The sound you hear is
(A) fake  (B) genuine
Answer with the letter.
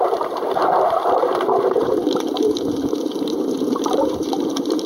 A